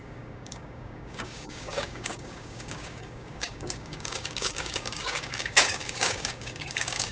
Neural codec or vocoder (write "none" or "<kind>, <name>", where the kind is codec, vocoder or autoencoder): codec, DAC